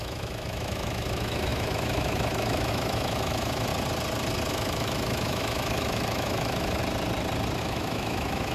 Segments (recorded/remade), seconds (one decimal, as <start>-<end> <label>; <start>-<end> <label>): 0.0-3.7 remade; 3.7-4.5 recorded; 4.5-6.8 remade; 6.8-7.6 recorded; 7.6-8.5 remade